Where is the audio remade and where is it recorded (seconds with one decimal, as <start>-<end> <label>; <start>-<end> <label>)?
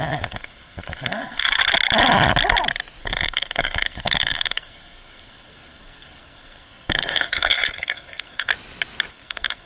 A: 0.0-1.6 remade; 1.6-3.0 recorded; 3.0-8.5 remade; 8.5-9.1 recorded; 9.1-9.7 remade